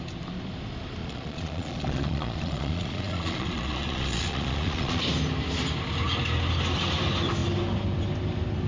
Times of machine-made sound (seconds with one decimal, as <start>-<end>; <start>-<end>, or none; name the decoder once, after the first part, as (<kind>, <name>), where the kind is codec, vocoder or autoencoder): 1.0-5.0 (vocoder, Vocos)